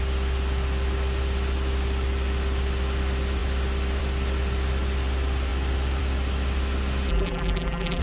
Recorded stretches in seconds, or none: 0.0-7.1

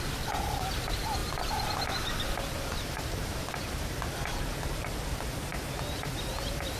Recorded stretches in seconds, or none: 0.0-1.2; 4.8-6.8

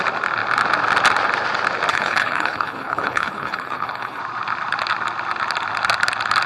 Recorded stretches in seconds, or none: 0.0-1.9; 4.2-6.5

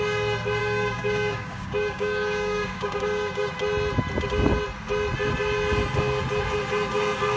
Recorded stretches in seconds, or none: 0.0-0.6; 3.5-7.4

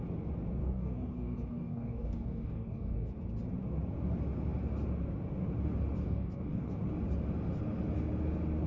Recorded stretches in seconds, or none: 0.0-0.6; 3.1-6.0; 6.8-8.7